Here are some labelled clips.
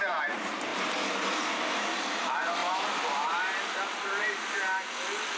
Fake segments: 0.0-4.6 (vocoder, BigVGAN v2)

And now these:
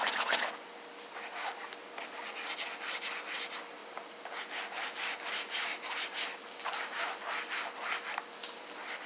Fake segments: none

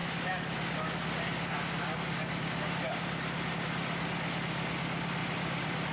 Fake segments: 5.2-5.9 (vocoder, BigVGAN v2)

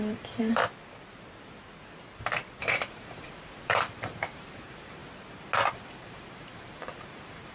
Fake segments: 0.0-0.6 (vocoder, BigVGAN v2); 2.6-5.0; 5.7-7.5

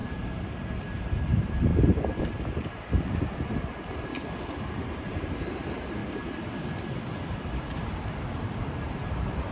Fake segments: 0.0-1.7 (vocoder, BigVGAN v2); 2.2-4.1; 4.7-6.0; 8.3-9.5

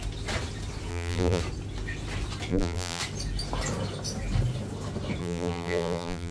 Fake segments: 0.9-1.4 (vocoder, BigVGAN v2); 2.5-3.0; 5.2-6.3

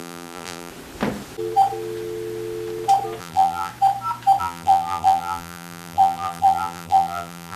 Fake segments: 0.0-0.7 (vocoder, BigVGAN v2); 3.2-3.7; 4.4-7.6

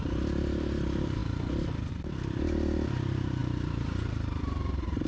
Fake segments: 0.0-1.2 (vocoder, BigVGAN v2); 1.9-5.1